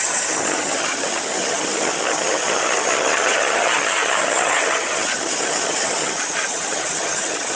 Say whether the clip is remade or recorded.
remade